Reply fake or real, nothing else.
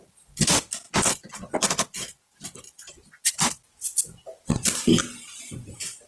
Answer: real